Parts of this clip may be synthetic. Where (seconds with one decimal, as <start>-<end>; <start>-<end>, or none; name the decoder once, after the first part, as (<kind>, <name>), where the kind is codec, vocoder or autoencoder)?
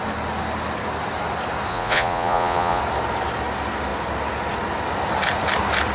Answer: 1.7-2.8 (vocoder, Vocos)